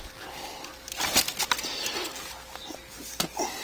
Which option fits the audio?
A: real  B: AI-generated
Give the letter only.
A